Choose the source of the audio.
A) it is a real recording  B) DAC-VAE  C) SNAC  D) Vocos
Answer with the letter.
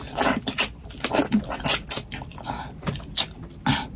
A